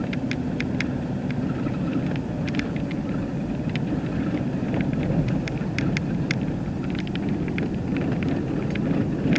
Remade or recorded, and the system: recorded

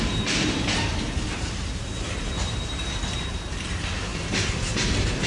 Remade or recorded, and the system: remade, vocoder, BigVGAN v2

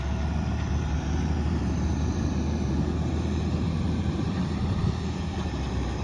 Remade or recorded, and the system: remade, vocoder, BigVGAN v2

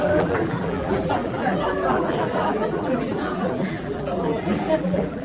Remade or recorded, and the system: remade, vocoder, BigVGAN v2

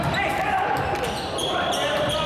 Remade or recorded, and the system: remade, vocoder, BigVGAN v2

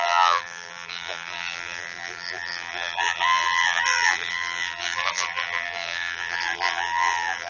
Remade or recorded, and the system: remade, vocoder, BigVGAN v2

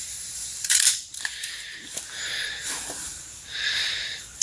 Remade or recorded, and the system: remade, vocoder, BigVGAN v2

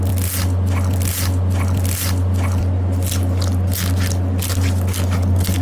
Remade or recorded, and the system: recorded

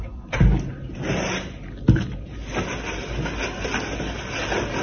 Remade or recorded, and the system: recorded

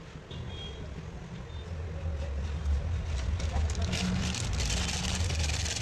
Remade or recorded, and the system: recorded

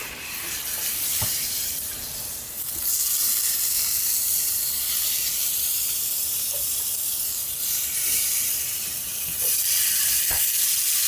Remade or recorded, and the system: remade, vocoder, BigVGAN v2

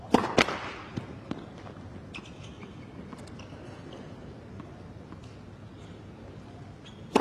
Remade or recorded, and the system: recorded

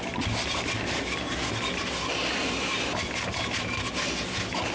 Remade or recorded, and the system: recorded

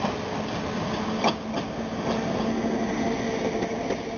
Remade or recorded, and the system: recorded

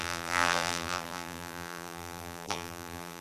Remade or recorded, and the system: remade, vocoder, BigVGAN v2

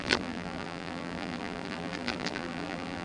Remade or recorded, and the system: remade, vocoder, BigVGAN v2